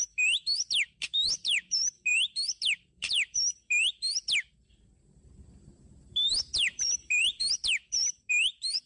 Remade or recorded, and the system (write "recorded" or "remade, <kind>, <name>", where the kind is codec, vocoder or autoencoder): remade, vocoder, BigVGAN v2